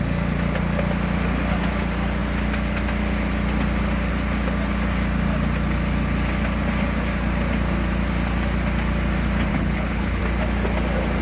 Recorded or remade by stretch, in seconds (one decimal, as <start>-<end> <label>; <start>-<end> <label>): 0.0-9.5 recorded; 9.5-10.2 remade; 10.2-11.2 recorded

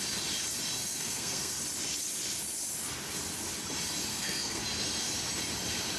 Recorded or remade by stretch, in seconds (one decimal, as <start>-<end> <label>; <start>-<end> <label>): 0.0-0.8 recorded; 0.8-1.6 remade; 1.6-4.1 recorded; 4.1-4.6 remade; 4.6-6.0 recorded

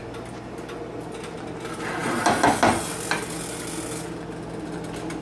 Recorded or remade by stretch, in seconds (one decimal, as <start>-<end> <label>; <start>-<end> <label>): 0.0-5.2 recorded